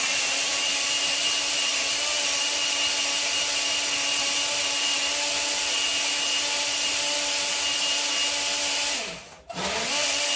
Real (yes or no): yes